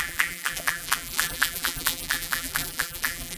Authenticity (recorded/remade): remade